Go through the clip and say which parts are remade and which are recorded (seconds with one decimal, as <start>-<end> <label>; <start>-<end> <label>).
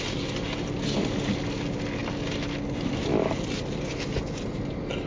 0.0-5.1 recorded